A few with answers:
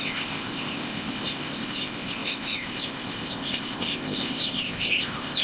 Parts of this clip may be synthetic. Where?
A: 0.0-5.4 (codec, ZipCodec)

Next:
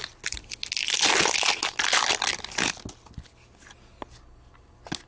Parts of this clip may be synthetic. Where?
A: none

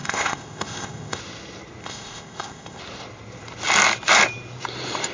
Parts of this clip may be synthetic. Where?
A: 0.0-1.2 (codec, ZipCodec); 1.8-2.8

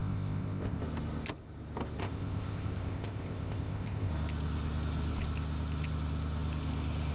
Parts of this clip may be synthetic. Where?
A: 0.0-0.8 (codec, ZipCodec); 2.0-4.1

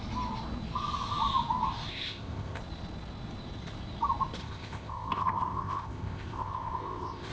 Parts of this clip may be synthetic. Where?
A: 1.9-2.6 (codec, ZipCodec); 4.4-7.3